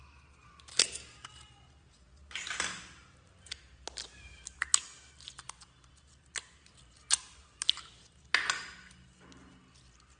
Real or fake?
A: real